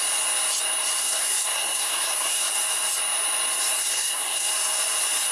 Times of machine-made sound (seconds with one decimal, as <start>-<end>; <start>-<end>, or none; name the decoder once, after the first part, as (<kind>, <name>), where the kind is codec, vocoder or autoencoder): 1.0-2.5 (codec, SNAC); 3.8-4.5